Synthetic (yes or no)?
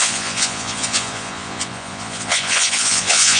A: yes